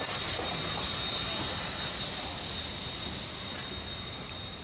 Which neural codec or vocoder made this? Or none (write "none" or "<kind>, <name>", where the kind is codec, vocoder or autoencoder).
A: none